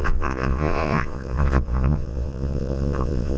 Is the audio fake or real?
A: fake